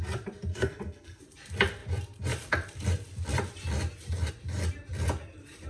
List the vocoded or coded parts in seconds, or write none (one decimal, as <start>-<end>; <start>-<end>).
0.5-1.2